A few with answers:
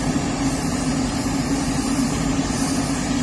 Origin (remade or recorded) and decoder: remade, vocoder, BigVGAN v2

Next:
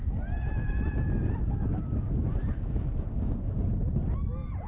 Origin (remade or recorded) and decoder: recorded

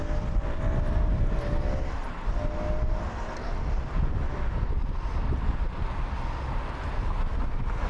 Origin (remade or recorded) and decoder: recorded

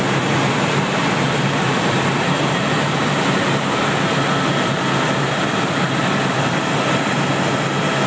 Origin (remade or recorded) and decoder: remade, vocoder, BigVGAN v2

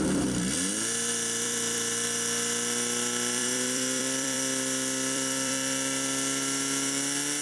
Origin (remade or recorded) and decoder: remade, vocoder, BigVGAN v2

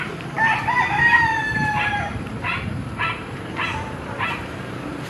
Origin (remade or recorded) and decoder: remade, vocoder, BigVGAN v2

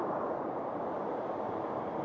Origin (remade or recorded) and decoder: remade, vocoder, BigVGAN v2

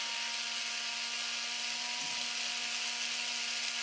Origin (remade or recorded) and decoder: recorded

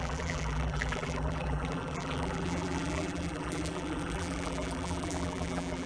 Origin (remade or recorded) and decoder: remade, vocoder, BigVGAN v2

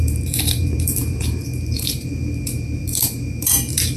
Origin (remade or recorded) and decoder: remade, vocoder, BigVGAN v2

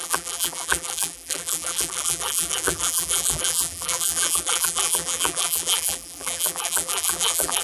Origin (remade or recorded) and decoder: remade, vocoder, BigVGAN v2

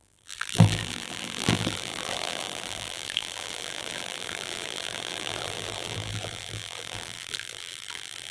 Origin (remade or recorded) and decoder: remade, vocoder, BigVGAN v2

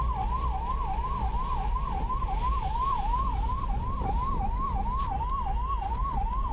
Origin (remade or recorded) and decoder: recorded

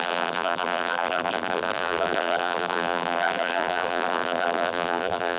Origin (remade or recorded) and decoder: remade, vocoder, BigVGAN v2